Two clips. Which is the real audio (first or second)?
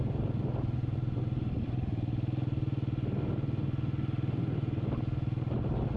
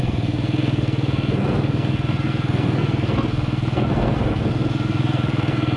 first